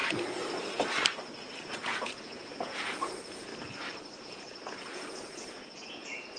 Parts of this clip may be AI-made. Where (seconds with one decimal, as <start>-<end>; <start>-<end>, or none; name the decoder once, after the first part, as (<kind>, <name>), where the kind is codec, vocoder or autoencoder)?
1.7-3.5 (vocoder, Vocos); 4.2-6.4